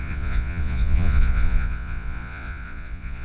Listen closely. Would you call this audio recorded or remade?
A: remade